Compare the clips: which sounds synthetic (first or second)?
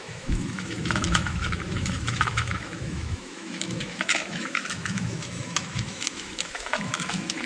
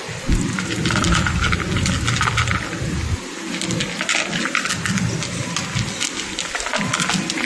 first